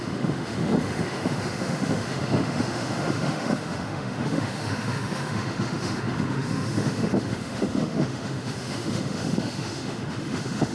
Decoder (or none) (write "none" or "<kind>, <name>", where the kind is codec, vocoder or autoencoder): autoencoder, DAC-VAE